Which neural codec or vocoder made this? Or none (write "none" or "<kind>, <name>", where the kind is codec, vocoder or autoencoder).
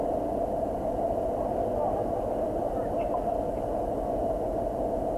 none